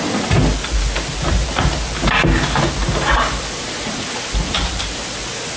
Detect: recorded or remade recorded